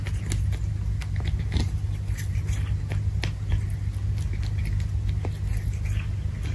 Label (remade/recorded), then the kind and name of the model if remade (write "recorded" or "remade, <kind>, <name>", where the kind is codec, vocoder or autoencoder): recorded